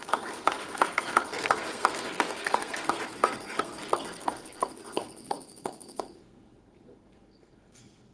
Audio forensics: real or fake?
fake